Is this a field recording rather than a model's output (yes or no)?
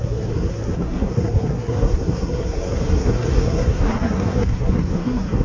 no